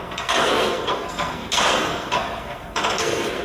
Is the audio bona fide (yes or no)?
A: no